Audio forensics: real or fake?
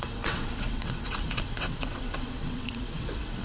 fake